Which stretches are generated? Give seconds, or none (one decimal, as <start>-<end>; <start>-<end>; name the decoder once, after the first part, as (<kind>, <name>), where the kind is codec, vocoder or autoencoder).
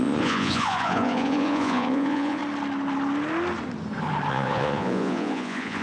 0.0-2.4 (vocoder, Vocos); 4.3-5.8